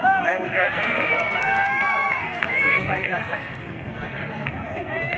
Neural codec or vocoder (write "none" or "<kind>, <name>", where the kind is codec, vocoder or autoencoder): codec, SNAC